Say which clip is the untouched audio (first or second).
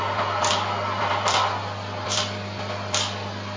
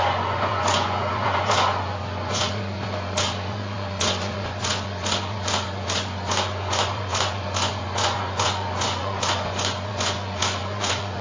first